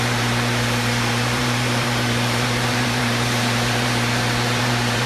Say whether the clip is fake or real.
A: fake